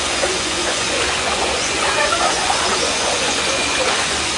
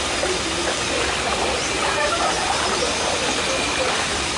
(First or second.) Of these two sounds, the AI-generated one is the first